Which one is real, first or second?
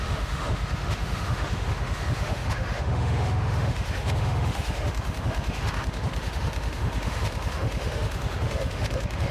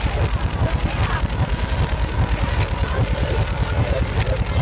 second